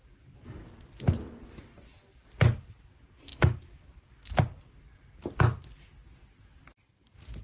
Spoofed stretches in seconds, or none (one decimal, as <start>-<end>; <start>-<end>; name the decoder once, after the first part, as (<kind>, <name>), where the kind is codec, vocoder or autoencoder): none